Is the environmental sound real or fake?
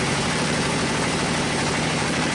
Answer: fake